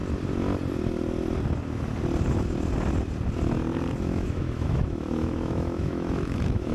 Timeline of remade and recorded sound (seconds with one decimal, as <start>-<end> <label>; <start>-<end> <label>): 0.0-4.0 recorded; 4.0-6.7 remade